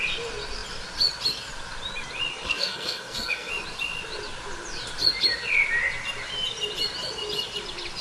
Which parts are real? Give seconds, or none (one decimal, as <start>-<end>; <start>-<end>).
0.0-2.3; 3.5-8.0